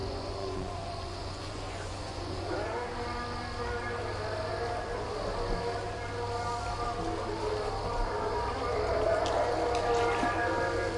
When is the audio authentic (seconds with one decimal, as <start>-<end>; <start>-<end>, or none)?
2.5-11.0